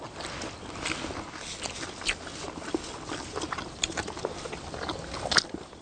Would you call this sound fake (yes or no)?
no